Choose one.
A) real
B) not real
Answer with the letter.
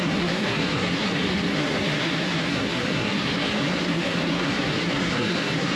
B